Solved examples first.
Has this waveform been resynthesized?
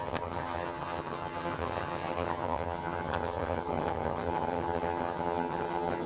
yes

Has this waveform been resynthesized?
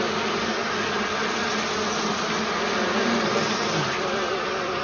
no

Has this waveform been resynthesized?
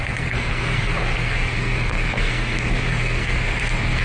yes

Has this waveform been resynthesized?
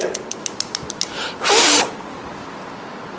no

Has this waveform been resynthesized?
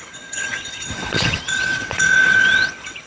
yes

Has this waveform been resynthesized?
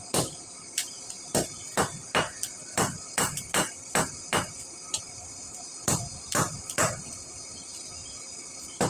yes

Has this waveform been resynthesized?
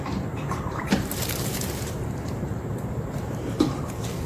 yes